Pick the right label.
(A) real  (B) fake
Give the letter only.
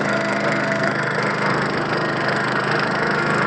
B